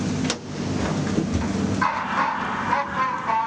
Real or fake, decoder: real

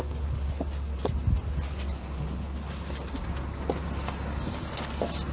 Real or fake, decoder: real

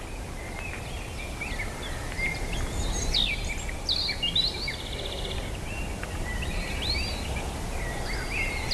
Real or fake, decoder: real